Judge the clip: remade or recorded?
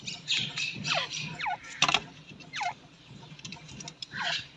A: remade